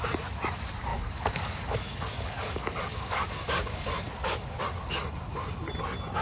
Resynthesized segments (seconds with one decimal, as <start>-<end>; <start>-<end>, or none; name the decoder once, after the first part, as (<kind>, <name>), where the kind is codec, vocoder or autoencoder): 0.9-4.6 (codec, DAC)